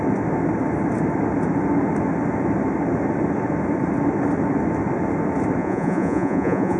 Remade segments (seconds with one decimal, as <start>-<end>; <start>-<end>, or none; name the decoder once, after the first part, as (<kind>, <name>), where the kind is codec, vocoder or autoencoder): 5.6-6.8 (vocoder, Vocos)